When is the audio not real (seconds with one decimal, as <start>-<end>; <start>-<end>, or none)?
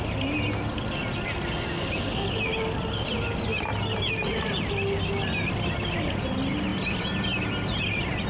none